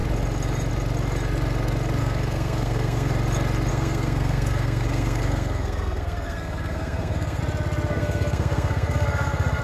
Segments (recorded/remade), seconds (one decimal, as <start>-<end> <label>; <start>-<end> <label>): 0.0-2.0 recorded; 2.0-3.1 remade; 3.1-3.7 recorded; 3.7-7.4 remade; 7.4-7.9 recorded; 7.9-9.6 remade